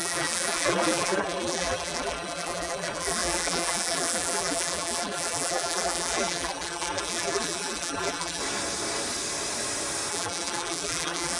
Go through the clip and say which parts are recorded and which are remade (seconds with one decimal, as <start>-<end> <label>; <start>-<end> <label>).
0.0-8.4 remade; 8.4-10.1 recorded; 10.1-11.4 remade